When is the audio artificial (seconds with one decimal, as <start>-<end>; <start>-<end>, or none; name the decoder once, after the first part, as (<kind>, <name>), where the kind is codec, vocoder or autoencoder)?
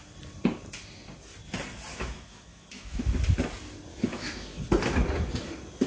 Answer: 1.9-3.0 (autoencoder, DAC-VAE); 3.9-4.6